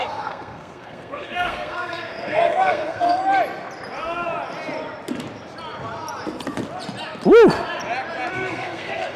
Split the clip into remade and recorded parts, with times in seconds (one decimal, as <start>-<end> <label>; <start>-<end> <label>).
0.0-3.2 remade; 3.2-8.3 recorded; 8.3-9.2 remade